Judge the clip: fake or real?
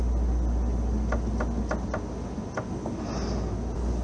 real